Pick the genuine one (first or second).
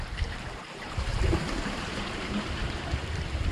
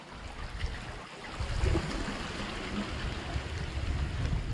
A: second